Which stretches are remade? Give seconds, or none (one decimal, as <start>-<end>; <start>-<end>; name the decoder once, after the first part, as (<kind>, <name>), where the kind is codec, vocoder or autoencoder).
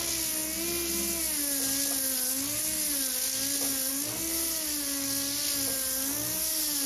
none